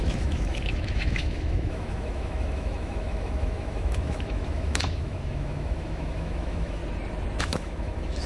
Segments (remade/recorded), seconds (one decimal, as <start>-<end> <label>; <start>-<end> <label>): 0.0-6.8 remade; 6.8-7.4 recorded; 7.4-8.3 remade